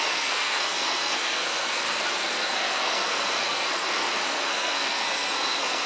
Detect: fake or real fake